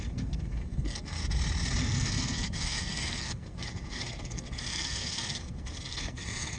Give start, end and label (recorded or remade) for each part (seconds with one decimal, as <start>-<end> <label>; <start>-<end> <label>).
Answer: 0.0-1.2 remade; 1.2-1.8 recorded; 1.8-6.6 remade